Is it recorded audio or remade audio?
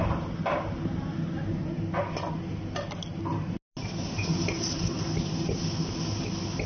recorded